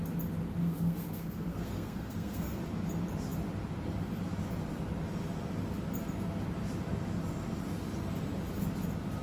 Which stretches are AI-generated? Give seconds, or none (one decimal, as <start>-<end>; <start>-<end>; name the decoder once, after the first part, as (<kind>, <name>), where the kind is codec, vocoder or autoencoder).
0.6-2.6 (codec, SNAC)